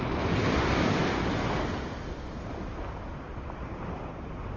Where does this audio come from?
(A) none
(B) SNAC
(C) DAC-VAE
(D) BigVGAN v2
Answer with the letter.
A